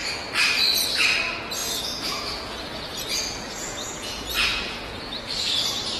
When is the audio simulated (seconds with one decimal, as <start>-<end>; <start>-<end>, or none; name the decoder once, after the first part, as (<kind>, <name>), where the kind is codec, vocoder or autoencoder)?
1.6-5.2 (vocoder, Vocos)